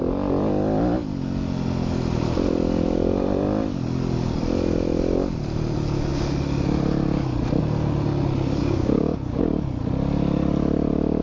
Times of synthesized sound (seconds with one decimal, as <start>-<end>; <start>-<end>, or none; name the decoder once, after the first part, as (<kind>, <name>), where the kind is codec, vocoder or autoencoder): 8.6-9.4 (codec, DAC)